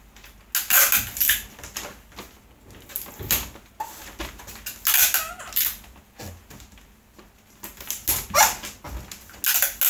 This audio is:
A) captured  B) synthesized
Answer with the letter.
A